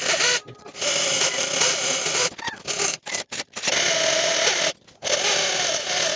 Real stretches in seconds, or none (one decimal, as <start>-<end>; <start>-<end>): 0.0-6.2